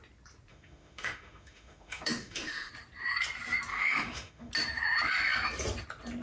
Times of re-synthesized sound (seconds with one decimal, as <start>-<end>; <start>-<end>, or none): 0.5-2.7; 3.7-4.5